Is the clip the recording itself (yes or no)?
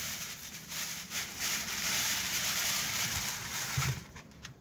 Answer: no